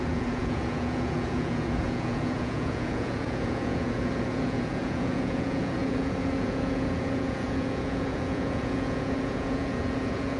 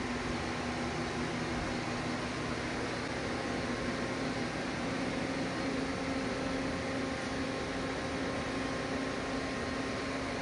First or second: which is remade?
first